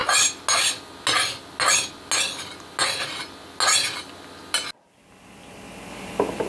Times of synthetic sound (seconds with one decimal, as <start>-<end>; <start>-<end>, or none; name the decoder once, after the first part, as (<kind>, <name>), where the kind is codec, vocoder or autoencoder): none